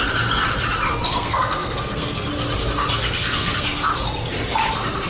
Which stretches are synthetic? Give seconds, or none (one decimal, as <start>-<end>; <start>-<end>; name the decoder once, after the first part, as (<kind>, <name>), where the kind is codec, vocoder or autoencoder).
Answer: 0.9-2.3 (codec, SNAC); 3.0-3.9

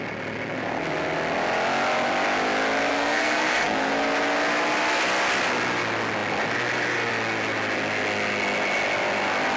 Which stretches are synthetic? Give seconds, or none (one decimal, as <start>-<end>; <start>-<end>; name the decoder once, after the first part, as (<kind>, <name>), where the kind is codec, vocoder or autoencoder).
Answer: 2.9-3.9 (codec, SNAC)

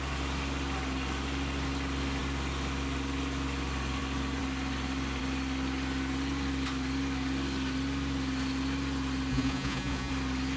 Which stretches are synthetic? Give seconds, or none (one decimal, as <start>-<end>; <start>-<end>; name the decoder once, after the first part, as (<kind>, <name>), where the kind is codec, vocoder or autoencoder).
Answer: 9.3-10.1 (vocoder, Vocos)

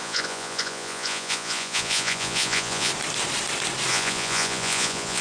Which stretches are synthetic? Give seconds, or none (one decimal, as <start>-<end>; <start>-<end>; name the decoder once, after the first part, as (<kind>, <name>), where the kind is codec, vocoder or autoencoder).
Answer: 0.0-2.9 (vocoder, Vocos); 3.9-5.2

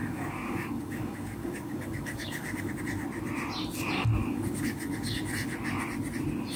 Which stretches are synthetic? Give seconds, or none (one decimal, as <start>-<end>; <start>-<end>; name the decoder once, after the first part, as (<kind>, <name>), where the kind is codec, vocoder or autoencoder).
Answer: 0.0-2.7 (codec, DAC); 4.2-5.2

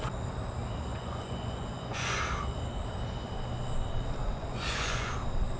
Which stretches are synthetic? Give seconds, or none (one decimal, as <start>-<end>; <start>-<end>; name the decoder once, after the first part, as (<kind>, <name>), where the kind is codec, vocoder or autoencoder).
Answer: 0.9-2.2 (vocoder, Vocos); 4.2-5.1

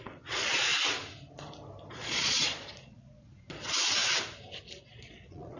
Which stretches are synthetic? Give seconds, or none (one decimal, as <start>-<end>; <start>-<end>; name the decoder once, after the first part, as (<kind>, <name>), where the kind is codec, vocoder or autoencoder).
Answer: 0.0-0.7 (vocoder, Vocos); 1.9-4.0; 4.8-5.6

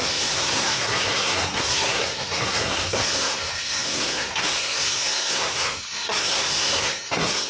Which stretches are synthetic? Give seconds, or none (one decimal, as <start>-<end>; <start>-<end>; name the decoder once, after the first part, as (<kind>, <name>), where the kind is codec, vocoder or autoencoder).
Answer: 0.0-7.5 (codec, SNAC)